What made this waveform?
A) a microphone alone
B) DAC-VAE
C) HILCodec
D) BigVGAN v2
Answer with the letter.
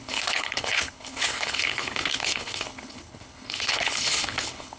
C